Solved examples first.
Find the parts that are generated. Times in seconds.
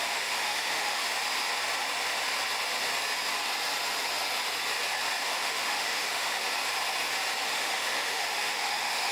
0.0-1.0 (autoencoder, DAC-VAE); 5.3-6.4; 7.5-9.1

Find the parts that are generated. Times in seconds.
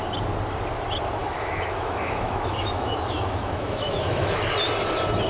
1.2-4.4 (autoencoder, DAC-VAE)